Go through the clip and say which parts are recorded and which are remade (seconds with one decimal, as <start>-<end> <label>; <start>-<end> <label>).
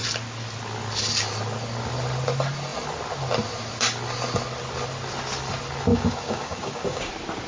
0.0-5.9 recorded; 5.9-7.1 remade; 7.1-7.5 recorded